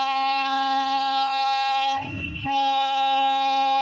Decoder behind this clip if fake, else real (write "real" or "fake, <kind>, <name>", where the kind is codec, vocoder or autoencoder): fake, codec, SNAC